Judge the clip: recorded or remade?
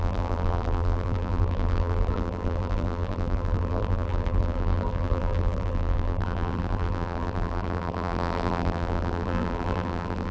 remade